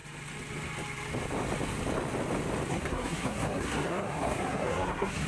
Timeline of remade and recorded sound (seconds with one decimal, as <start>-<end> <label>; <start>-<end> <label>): 0.0-2.7 recorded; 2.7-5.3 remade